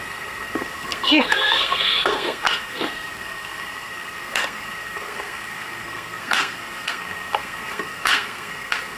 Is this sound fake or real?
fake